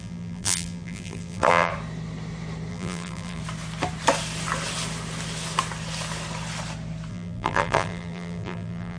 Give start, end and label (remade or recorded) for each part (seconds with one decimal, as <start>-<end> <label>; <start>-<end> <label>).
0.0-1.7 remade; 1.7-2.7 recorded; 2.7-3.4 remade; 3.4-7.1 recorded; 7.1-9.0 remade